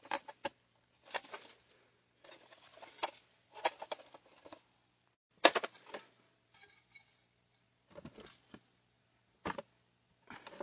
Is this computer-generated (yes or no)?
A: no